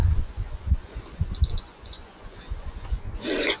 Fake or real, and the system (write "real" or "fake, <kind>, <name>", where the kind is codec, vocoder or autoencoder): fake, vocoder, Vocos